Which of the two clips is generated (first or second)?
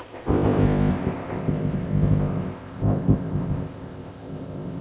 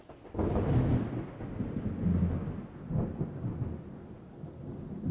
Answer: first